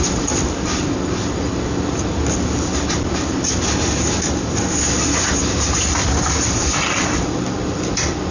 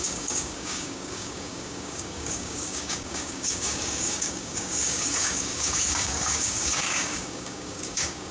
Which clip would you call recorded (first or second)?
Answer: first